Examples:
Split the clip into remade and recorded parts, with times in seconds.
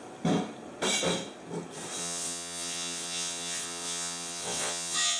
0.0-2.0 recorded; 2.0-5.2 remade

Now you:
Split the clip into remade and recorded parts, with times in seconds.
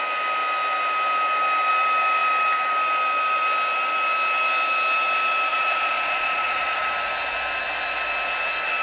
0.0-5.5 recorded; 5.5-6.9 remade; 6.9-8.8 recorded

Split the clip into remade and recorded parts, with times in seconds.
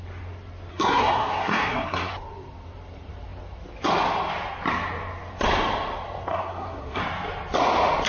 0.0-0.7 recorded; 0.7-2.1 remade; 2.1-6.3 recorded; 6.3-7.0 remade; 7.0-8.1 recorded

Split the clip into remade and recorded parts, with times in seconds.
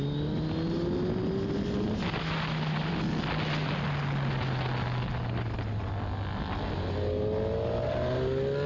0.0-8.7 recorded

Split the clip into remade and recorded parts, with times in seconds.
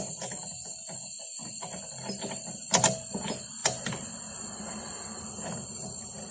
0.0-6.3 recorded